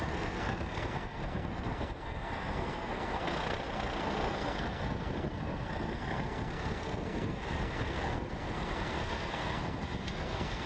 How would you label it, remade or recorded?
remade